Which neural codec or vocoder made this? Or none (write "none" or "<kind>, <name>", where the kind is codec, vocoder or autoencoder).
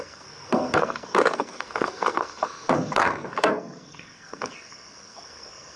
codec, SNAC